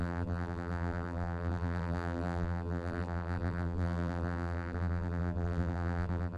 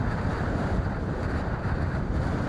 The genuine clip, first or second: second